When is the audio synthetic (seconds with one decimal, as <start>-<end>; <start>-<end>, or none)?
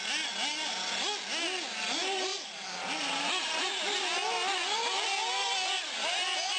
none